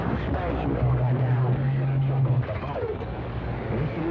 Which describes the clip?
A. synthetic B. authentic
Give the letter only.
A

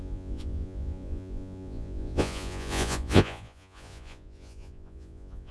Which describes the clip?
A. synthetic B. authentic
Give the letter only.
A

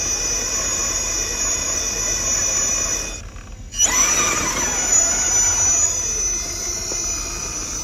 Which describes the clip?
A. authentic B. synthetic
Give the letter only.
A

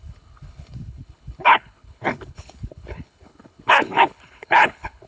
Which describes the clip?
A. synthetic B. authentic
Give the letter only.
A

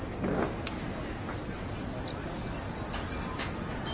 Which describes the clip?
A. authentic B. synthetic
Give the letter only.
A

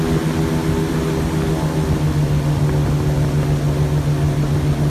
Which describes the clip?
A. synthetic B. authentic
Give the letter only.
B